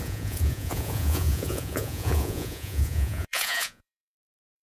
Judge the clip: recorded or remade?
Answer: remade